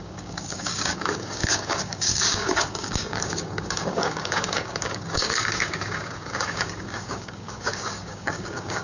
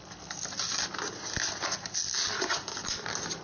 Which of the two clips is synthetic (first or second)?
first